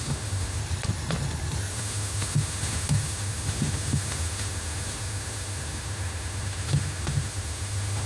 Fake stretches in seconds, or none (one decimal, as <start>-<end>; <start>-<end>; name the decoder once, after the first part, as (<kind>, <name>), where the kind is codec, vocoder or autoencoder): 0.0-0.6 (autoencoder, DAC-VAE); 1.7-8.1